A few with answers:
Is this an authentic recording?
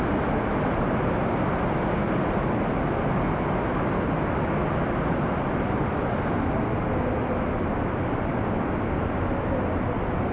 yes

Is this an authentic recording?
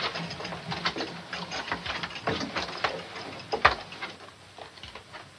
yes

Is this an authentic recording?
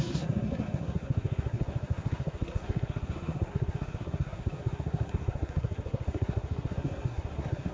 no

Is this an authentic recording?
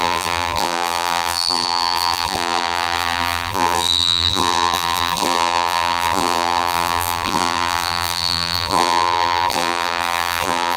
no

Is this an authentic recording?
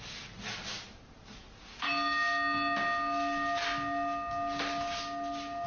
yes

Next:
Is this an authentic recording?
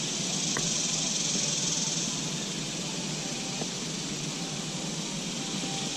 yes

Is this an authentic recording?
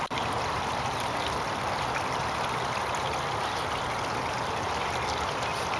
yes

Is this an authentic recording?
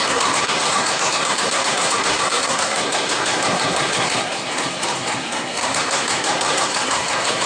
no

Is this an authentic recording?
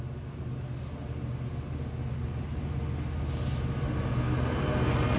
yes